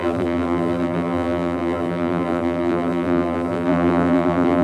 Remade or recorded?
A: remade